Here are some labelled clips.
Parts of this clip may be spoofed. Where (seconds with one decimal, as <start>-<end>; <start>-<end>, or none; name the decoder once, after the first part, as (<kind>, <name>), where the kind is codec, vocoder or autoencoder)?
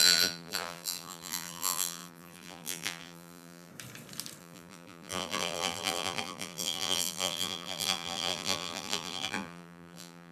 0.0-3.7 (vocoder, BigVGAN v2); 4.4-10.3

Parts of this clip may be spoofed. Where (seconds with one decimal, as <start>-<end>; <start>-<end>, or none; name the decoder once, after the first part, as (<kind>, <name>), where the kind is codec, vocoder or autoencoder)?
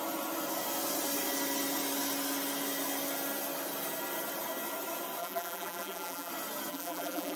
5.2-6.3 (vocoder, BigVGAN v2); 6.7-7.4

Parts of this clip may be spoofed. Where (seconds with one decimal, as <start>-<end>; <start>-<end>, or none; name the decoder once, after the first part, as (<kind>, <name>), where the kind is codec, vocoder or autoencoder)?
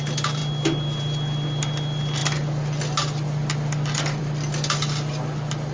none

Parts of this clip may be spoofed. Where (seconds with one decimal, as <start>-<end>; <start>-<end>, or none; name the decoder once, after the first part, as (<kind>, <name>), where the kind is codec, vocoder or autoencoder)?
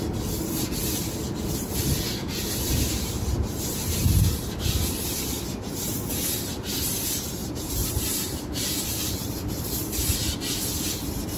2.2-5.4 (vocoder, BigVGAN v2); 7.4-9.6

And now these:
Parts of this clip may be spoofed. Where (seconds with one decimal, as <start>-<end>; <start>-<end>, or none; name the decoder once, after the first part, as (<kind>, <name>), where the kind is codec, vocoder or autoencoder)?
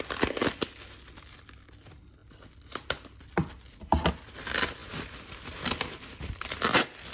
none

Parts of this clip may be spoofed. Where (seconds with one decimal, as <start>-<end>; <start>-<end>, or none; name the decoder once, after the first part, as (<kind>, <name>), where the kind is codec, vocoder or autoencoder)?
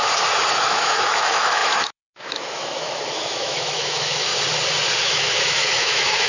0.6-4.3 (autoencoder, DAC-VAE); 5.0-6.3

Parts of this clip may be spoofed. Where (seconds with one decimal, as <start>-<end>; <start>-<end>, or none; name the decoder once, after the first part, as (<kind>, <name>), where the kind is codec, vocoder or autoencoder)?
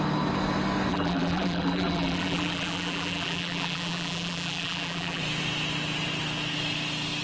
0.9-5.2 (vocoder, BigVGAN v2)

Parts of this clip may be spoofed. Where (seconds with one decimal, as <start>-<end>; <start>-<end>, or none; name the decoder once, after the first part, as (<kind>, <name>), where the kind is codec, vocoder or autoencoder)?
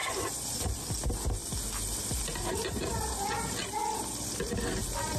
none